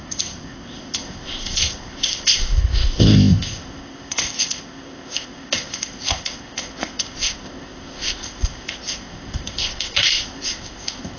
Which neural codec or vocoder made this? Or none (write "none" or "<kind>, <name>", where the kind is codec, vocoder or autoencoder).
codec, ZipCodec